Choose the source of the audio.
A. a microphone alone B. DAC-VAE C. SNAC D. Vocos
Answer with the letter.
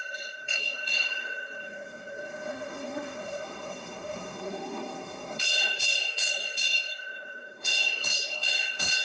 C